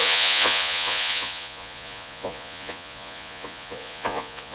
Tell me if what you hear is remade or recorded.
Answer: remade